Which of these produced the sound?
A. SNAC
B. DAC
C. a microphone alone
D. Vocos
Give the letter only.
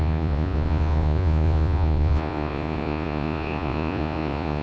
D